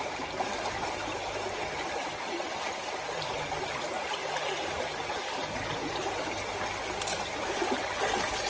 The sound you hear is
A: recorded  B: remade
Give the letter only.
A